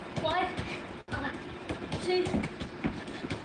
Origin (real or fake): real